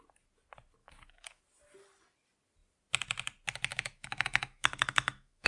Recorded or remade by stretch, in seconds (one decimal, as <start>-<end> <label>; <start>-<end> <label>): 0.0-0.8 recorded; 0.8-1.4 remade; 1.4-3.7 recorded; 3.7-5.5 remade